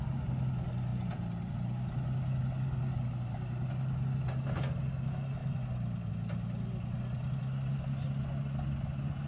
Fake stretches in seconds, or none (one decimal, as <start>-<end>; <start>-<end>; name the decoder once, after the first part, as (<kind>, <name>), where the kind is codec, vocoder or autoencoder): 0.9-1.5 (vocoder, BigVGAN v2)